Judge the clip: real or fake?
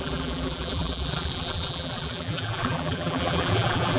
fake